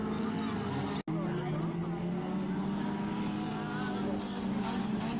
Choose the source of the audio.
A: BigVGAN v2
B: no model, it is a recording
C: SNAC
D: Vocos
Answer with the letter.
B